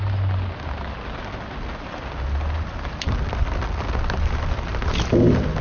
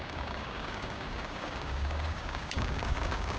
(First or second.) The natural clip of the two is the first